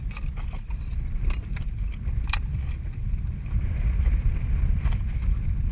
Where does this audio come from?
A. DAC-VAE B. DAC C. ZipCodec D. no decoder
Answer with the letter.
D